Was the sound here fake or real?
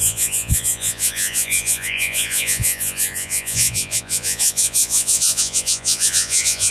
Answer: fake